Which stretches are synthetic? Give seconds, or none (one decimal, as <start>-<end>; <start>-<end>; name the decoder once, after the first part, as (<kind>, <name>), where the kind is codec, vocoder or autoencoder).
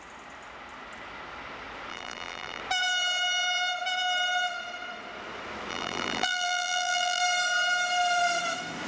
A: 1.9-2.6 (vocoder, BigVGAN v2); 5.7-7.2